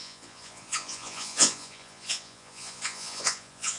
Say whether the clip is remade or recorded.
remade